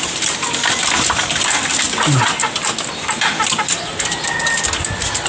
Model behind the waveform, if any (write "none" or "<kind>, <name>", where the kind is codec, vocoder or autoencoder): none